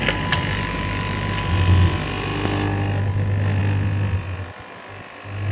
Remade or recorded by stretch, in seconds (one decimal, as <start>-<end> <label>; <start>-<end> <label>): 0.0-5.5 recorded